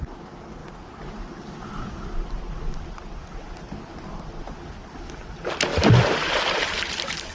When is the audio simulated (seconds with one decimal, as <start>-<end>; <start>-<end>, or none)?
none

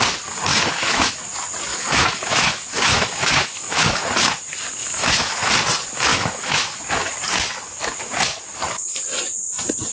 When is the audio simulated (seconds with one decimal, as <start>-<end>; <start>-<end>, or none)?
0.5-1.1; 1.7-4.0; 4.8-5.5; 6.1-6.8

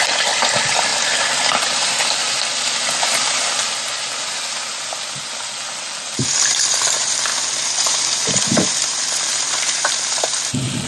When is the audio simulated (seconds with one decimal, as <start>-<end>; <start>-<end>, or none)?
0.0-0.9; 5.7-10.9

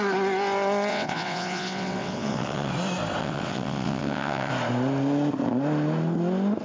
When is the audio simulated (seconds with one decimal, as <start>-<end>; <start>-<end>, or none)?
0.9-2.7; 3.2-4.5

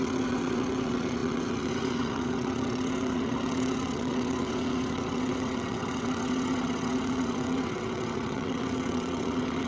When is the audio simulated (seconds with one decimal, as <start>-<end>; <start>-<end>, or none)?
0.0-9.7